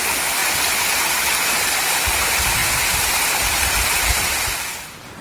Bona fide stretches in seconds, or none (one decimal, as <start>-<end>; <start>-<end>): 0.4-1.9